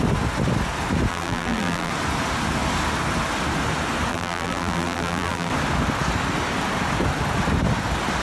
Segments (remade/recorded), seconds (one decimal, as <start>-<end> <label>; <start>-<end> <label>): 0.0-1.1 recorded; 1.1-1.9 remade; 1.9-4.1 recorded; 4.1-5.5 remade; 5.5-8.2 recorded